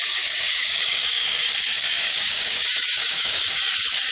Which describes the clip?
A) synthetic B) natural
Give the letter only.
A